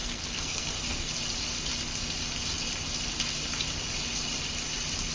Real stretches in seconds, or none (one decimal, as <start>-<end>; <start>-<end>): 1.1-5.1